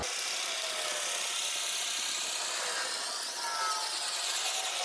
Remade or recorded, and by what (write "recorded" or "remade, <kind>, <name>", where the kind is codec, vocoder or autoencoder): recorded